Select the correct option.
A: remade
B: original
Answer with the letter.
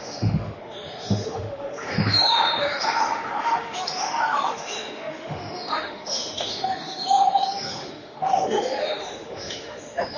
A